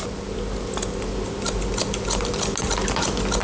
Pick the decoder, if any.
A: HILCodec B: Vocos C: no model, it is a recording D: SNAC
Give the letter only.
C